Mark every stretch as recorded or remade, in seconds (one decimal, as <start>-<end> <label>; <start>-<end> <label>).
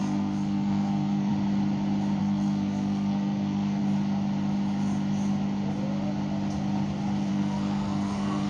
0.0-1.3 remade; 1.3-2.2 recorded; 2.2-3.8 remade; 3.8-7.3 recorded; 7.3-8.5 remade